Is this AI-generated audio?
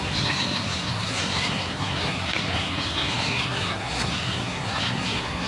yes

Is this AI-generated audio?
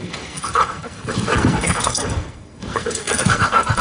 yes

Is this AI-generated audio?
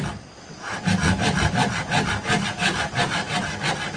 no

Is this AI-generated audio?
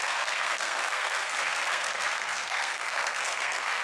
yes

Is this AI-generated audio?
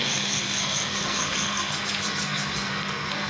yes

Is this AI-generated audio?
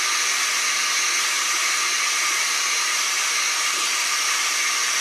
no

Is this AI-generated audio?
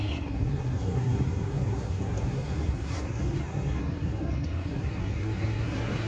yes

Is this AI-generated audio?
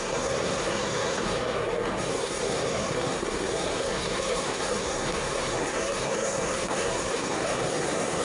yes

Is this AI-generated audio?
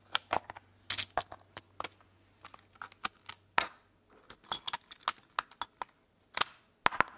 no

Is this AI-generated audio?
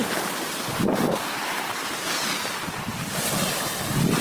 no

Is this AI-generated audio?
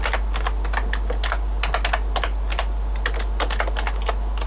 no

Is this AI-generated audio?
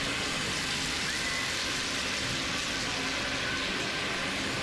no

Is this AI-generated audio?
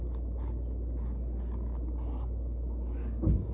no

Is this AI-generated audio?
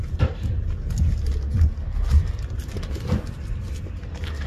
no